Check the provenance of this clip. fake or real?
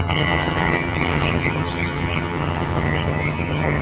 fake